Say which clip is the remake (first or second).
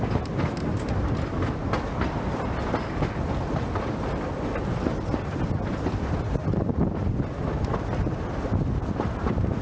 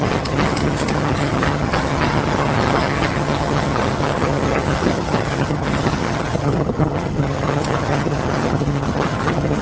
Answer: second